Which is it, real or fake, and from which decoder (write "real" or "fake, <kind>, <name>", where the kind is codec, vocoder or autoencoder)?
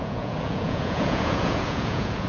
fake, vocoder, Vocos